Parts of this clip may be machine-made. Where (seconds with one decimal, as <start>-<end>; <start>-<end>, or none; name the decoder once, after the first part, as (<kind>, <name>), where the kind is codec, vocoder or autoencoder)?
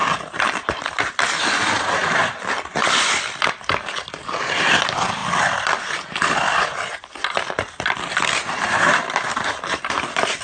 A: 0.0-10.4 (vocoder, BigVGAN v2)